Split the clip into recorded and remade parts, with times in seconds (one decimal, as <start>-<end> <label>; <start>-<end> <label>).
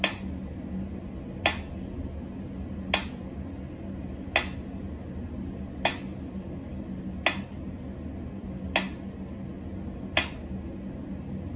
0.0-11.6 recorded